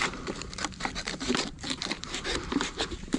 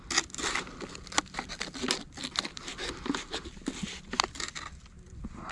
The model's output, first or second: first